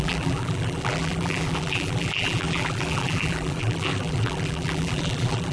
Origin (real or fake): fake